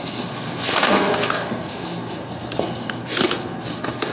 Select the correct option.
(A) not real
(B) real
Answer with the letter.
A